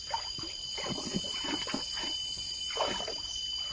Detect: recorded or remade recorded